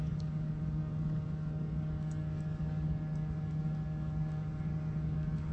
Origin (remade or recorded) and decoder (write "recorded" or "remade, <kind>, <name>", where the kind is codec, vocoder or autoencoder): remade, codec, DAC